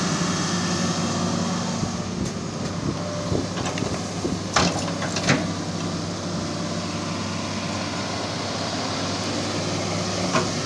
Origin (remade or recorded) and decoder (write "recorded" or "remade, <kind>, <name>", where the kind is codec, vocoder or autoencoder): recorded